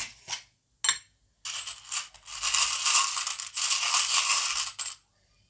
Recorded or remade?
recorded